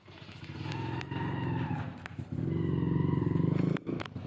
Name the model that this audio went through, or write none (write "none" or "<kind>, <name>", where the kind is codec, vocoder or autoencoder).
none